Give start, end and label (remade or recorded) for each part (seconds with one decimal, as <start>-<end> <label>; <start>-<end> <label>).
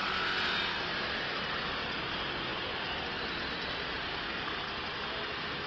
0.0-5.7 recorded